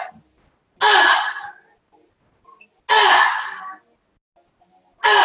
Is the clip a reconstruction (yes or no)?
no